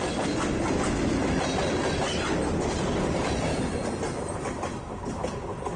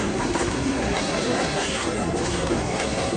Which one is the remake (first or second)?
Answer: second